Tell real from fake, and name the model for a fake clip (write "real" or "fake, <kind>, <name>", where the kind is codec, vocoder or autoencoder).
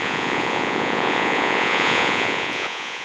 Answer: fake, vocoder, Vocos